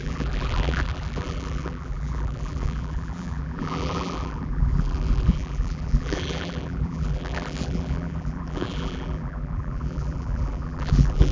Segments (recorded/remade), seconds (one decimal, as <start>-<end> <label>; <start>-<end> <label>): 0.0-11.3 remade